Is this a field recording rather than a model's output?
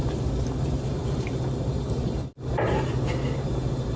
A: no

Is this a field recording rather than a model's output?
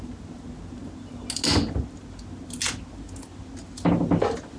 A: yes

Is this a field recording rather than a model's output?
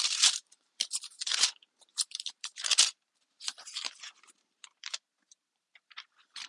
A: no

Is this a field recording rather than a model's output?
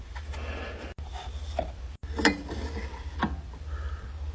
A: yes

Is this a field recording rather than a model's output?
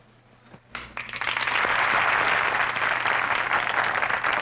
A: yes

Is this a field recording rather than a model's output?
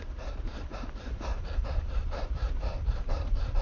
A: no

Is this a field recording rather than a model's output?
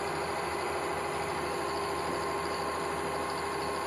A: yes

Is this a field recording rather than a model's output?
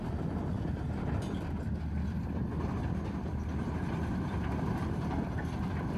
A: no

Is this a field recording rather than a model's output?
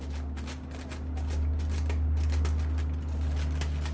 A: yes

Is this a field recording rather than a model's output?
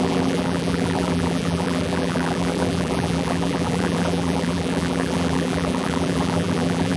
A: no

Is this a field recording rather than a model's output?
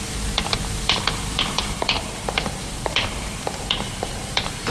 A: no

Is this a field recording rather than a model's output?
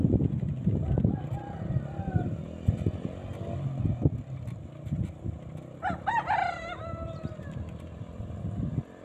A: yes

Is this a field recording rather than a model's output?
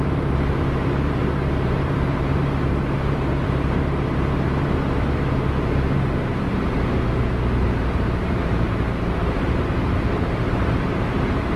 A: no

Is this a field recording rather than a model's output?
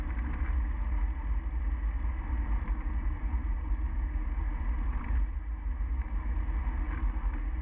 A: yes